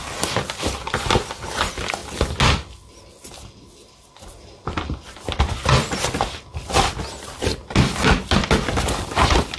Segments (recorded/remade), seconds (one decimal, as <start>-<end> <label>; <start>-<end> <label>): 0.0-9.6 recorded